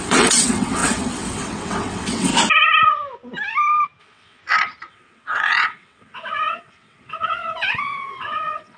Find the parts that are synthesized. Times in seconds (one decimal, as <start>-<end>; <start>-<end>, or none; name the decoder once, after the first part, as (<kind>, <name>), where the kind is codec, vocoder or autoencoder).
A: 0.0-2.3 (vocoder, WaveNeXt); 4.0-4.4; 4.9-8.8